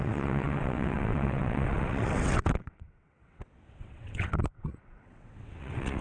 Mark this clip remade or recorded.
remade